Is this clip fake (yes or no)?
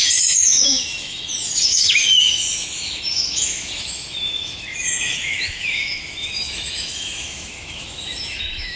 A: yes